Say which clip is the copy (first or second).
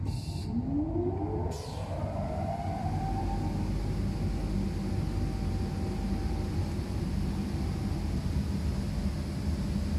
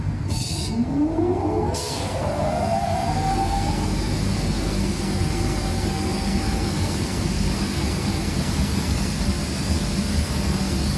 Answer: second